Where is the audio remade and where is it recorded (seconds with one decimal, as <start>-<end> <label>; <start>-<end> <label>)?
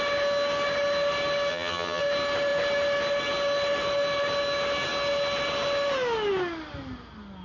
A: 0.0-1.5 recorded; 1.5-2.0 remade; 2.0-7.4 recorded